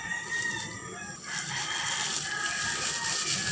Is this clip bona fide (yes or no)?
yes